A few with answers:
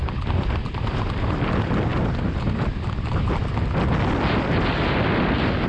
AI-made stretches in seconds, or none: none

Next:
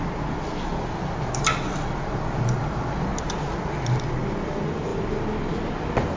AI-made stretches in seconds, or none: none

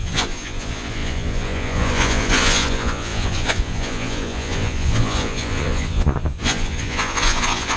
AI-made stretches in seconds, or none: 0.0-7.8 (vocoder, Vocos)

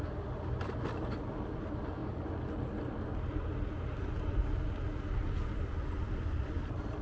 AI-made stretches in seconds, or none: none

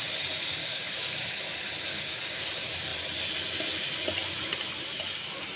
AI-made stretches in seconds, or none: 0.6-1.3 (codec, DAC); 1.9-2.5

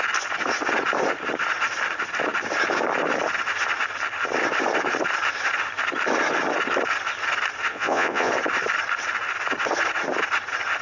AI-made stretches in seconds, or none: 7.7-8.3 (vocoder, Vocos)

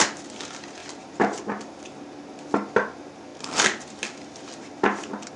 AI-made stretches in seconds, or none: none

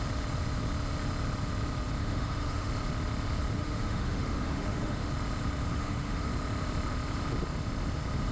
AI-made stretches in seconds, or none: 2.0-2.7 (autoencoder, DAC-VAE); 3.6-5.1; 5.7-6.3